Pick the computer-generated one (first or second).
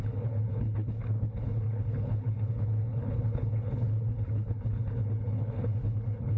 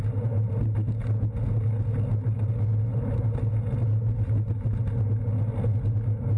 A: first